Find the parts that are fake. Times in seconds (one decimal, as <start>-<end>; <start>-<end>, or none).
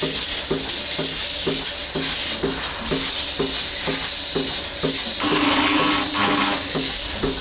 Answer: none